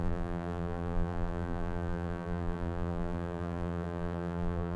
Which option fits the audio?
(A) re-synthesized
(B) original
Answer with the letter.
A